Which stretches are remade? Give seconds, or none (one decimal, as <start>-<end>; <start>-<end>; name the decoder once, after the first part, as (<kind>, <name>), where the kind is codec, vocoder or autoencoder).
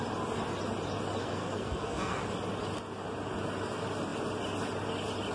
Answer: 1.2-2.2 (codec, SNAC)